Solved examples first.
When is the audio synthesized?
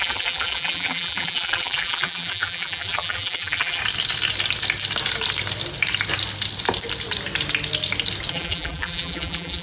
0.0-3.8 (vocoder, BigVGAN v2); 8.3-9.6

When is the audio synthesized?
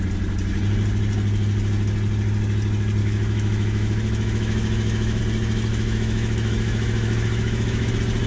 3.0-5.2 (autoencoder, DAC-VAE); 5.7-7.9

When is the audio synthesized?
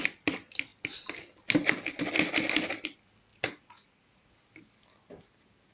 3.3-4.3 (vocoder, Vocos)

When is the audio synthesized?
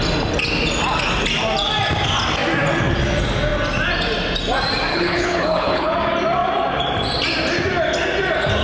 4.9-5.9 (codec, HILCodec)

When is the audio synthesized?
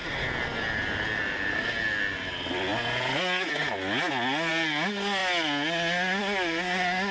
none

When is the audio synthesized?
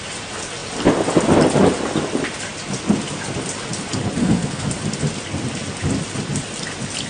4.2-4.7 (codec, SNAC)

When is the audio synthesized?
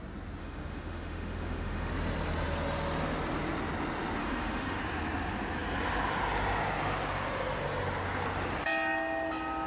0.4-1.9 (autoencoder, DAC-VAE); 4.2-4.8